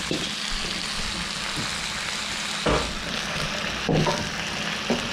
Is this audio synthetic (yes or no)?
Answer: no